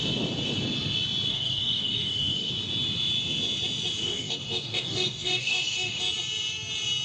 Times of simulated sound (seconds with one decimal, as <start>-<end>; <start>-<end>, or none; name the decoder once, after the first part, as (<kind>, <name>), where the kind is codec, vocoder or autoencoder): 1.3-2.5 (codec, DAC); 4.0-6.0